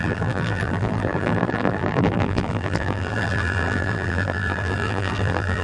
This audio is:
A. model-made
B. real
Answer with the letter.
A